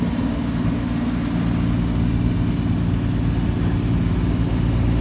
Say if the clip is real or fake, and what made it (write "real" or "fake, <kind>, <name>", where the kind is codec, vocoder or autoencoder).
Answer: real